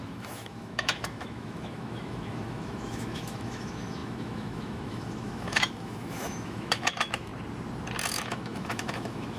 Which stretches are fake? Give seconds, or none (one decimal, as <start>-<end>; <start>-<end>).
0.0-7.3; 8.1-9.4